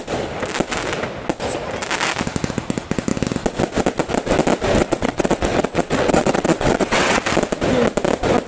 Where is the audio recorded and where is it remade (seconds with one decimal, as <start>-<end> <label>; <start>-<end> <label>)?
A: 0.0-4.8 recorded; 4.8-7.2 remade; 7.2-8.5 recorded